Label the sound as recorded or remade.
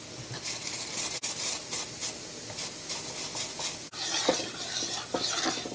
recorded